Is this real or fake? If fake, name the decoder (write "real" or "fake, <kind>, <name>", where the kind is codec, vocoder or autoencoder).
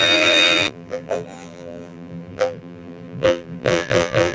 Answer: fake, vocoder, BigVGAN v2